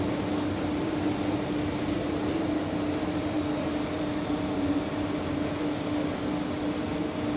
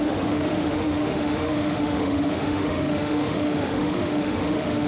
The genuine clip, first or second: first